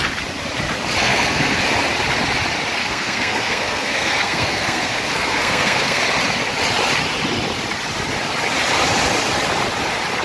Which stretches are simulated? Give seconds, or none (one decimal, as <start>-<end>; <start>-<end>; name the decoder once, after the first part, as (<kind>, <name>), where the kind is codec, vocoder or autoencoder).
1.0-1.6 (codec, SNAC); 2.8-6.0